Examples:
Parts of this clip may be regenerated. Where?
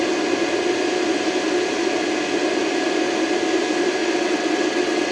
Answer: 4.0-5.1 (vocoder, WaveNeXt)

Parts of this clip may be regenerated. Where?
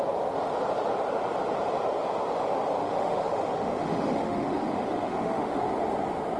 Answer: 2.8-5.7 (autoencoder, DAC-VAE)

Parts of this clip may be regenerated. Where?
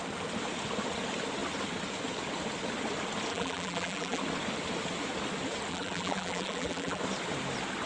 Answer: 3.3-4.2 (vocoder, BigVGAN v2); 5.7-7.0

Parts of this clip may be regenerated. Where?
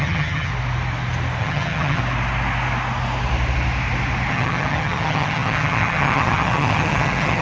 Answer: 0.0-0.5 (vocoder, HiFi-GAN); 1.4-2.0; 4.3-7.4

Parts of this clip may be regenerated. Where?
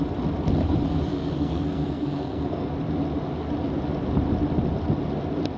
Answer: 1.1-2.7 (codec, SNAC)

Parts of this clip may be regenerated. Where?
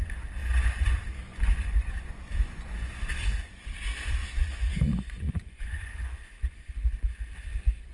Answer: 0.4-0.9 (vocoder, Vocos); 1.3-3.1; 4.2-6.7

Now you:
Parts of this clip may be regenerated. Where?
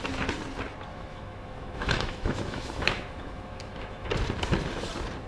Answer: 0.9-4.1 (autoencoder, DAC-VAE)